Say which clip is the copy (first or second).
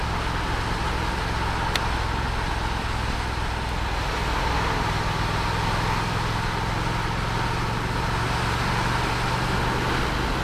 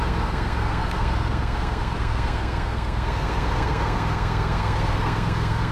second